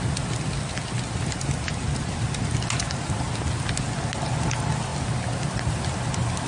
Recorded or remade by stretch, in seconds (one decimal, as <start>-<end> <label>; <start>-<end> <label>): 0.0-6.5 recorded